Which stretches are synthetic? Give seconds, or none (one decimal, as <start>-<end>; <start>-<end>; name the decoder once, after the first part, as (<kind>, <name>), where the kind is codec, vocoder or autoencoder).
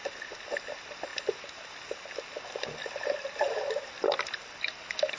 none